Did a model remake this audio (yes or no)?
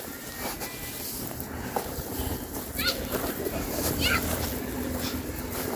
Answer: no